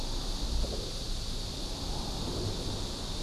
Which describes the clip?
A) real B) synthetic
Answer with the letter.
A